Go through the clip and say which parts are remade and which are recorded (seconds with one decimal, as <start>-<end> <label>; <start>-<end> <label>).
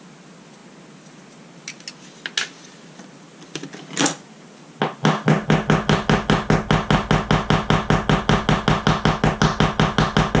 0.0-10.4 recorded